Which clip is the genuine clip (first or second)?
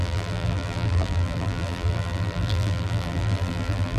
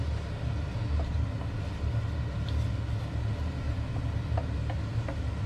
second